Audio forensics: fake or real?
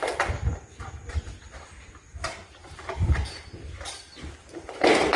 real